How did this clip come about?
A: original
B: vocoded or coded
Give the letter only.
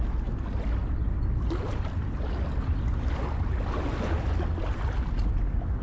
A